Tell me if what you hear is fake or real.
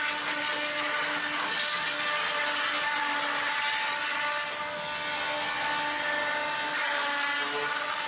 real